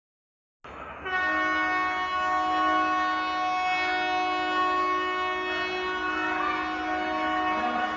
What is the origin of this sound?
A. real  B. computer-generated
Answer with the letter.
A